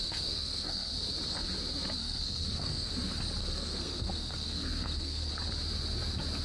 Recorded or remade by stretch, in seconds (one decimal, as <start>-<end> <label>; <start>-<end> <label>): 0.0-0.9 remade; 0.9-2.0 recorded; 2.0-2.9 remade; 2.9-3.4 recorded; 3.4-5.3 remade; 5.3-6.4 recorded